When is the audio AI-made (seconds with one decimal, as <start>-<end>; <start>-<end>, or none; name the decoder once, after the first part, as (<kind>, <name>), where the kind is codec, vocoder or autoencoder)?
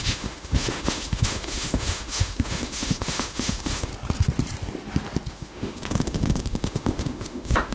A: 0.0-3.9 (autoencoder, DAC-VAE); 5.3-7.7